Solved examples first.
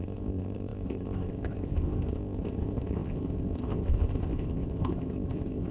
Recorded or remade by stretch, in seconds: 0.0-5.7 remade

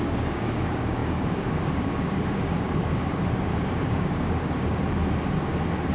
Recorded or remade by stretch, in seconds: 0.0-5.0 remade; 5.0-5.9 recorded

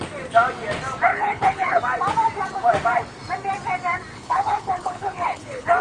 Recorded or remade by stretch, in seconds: 0.0-1.1 recorded; 1.1-1.8 remade; 1.8-4.1 recorded; 4.1-5.8 remade

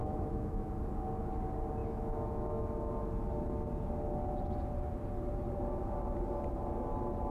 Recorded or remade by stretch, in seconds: 0.0-0.7 remade; 0.7-1.8 recorded; 1.8-2.6 remade; 2.6-7.3 recorded